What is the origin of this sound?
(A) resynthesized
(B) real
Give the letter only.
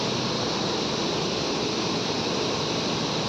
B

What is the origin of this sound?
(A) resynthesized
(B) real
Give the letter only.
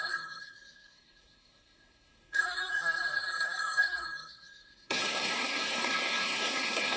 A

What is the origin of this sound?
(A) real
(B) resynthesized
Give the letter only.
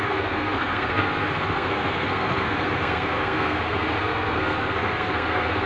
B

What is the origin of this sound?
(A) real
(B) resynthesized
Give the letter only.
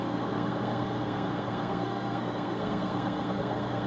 B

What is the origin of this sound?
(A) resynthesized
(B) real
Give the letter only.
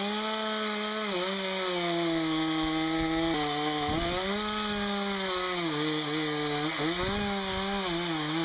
B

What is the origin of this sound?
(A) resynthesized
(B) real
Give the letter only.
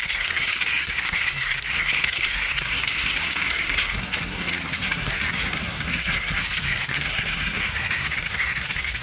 A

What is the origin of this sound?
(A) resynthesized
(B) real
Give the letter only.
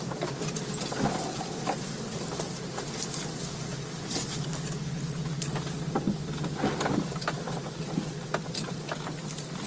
B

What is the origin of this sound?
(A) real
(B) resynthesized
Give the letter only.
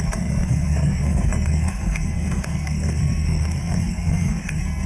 B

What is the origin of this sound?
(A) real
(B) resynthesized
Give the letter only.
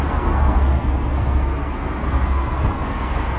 B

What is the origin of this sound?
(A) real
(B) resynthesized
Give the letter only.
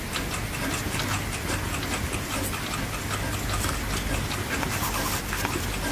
A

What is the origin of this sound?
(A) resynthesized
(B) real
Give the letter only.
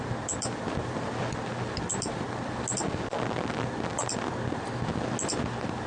B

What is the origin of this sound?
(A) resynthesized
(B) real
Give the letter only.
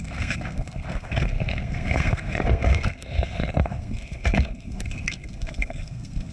A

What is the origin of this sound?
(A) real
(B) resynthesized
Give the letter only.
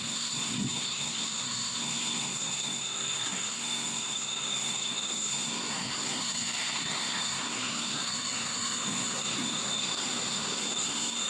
B